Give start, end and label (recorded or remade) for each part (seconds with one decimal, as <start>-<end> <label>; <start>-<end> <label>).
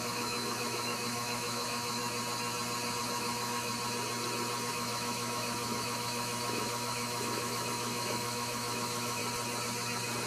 0.0-2.0 remade; 2.0-3.0 recorded; 3.0-3.7 remade; 3.7-4.7 recorded; 4.7-9.2 remade; 9.2-10.3 recorded